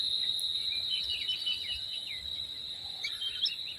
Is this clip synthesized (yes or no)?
no